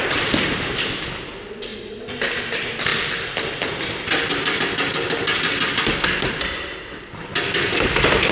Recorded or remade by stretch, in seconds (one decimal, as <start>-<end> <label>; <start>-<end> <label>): 0.0-8.3 recorded